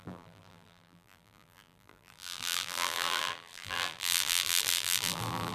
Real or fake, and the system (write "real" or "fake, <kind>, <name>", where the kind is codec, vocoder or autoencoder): fake, vocoder, BigVGAN v2